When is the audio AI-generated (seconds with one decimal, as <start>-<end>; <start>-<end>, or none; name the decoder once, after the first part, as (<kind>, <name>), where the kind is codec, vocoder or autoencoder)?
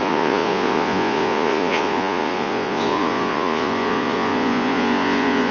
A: 0.0-5.5 (vocoder, Vocos)